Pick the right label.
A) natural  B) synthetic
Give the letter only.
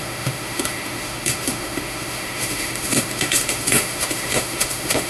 B